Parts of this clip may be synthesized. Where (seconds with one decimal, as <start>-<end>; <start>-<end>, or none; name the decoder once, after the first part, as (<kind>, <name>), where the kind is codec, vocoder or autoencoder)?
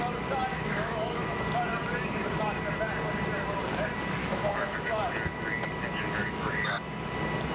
0.5-1.4 (autoencoder, DAC-VAE); 4.2-5.0; 6.2-6.7